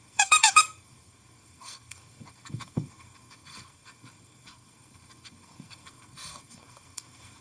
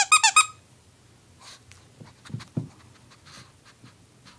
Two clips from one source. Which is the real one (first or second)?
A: second